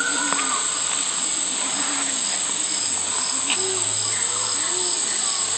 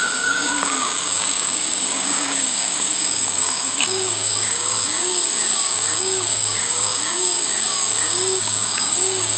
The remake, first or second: second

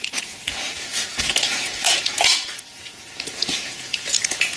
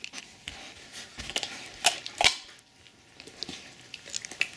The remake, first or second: first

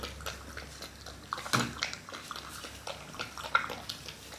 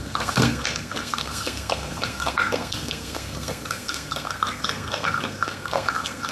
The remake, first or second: second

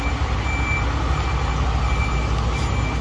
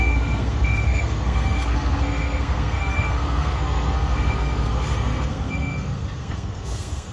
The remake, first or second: second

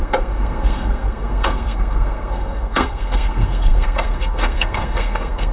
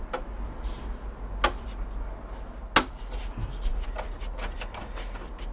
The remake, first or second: first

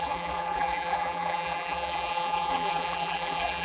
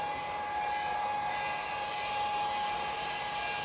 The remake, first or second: first